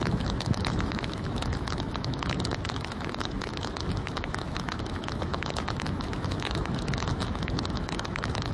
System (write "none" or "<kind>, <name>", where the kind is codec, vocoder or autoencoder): autoencoder, DAC-VAE